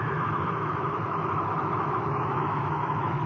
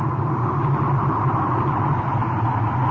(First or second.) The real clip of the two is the second